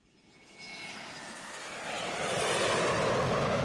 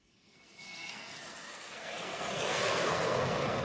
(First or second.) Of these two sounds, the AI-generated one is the second